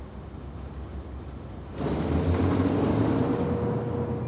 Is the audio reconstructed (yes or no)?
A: no